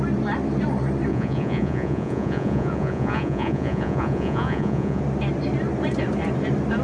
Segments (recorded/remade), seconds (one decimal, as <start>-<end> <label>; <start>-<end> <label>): 0.0-1.1 recorded; 1.1-5.0 remade; 5.0-6.8 recorded